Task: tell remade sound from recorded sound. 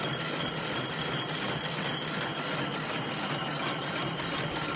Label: recorded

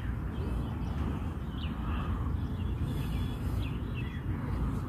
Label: recorded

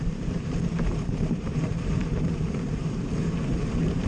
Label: remade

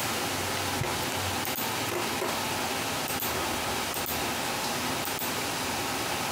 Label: recorded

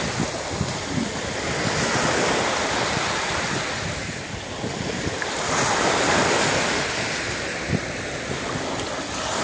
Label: recorded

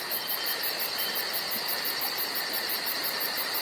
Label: recorded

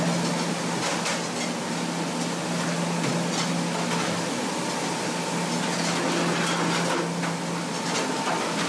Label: recorded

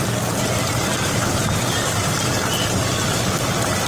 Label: remade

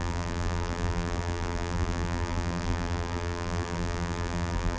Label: remade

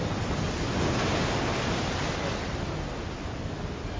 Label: recorded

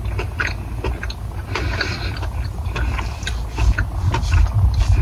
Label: recorded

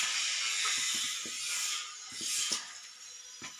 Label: remade